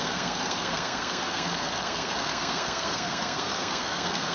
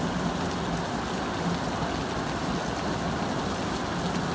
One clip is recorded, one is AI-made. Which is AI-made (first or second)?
first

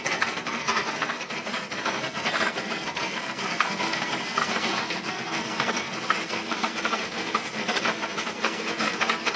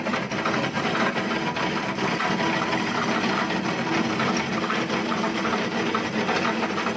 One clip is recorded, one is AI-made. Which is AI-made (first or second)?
first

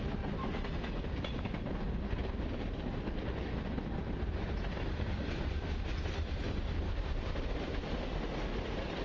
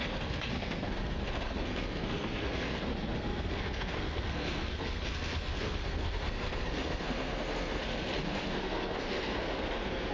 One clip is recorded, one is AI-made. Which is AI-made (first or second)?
second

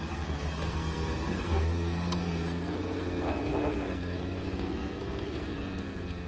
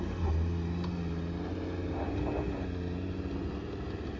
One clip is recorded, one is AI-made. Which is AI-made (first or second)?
first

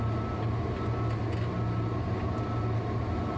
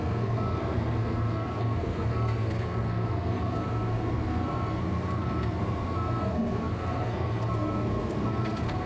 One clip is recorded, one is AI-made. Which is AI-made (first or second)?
second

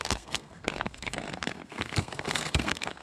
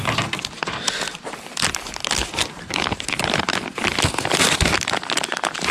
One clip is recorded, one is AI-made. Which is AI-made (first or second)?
first